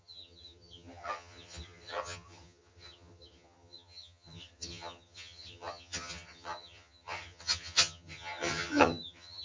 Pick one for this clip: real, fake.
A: fake